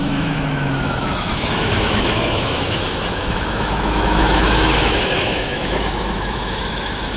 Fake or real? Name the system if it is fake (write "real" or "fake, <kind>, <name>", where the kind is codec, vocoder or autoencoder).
fake, autoencoder, DAC-VAE